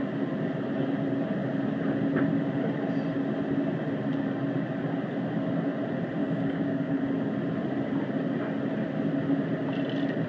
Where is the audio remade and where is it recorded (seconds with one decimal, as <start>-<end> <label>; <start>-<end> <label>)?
0.0-6.2 recorded; 6.2-6.9 remade; 6.9-10.3 recorded